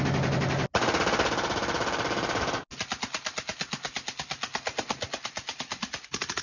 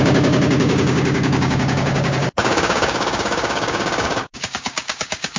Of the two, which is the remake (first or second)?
second